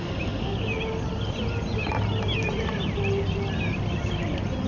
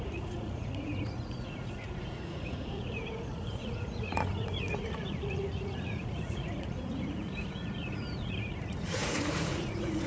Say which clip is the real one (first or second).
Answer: first